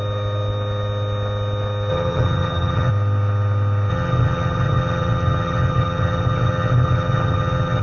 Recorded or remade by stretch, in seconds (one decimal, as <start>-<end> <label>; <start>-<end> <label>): 0.0-1.9 recorded; 1.9-2.9 remade; 2.9-3.9 recorded; 3.9-7.8 remade

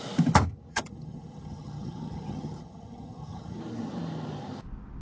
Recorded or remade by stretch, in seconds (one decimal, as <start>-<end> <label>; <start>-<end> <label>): 0.0-0.7 recorded; 0.7-3.6 remade; 3.6-5.0 recorded

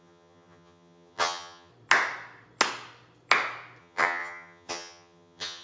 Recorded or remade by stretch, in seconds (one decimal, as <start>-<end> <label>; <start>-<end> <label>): 0.0-1.7 remade; 1.7-3.8 recorded; 3.8-5.6 remade

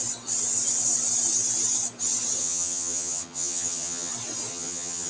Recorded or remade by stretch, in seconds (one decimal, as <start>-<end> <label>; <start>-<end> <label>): 0.0-2.4 recorded; 2.4-4.1 remade; 4.1-4.5 recorded; 4.5-5.1 remade

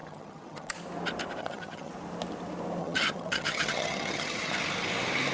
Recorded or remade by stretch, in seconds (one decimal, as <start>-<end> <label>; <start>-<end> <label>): 0.0-0.7 remade; 0.7-1.4 recorded; 1.4-1.9 remade; 1.9-2.8 recorded; 2.8-4.5 remade; 4.5-5.3 recorded